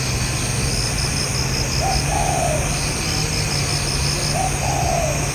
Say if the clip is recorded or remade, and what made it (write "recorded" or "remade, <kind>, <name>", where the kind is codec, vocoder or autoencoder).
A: recorded